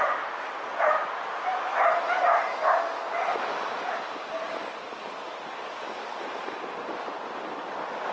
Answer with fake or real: real